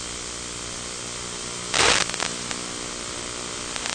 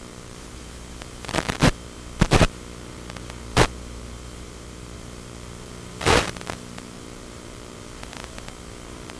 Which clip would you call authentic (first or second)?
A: first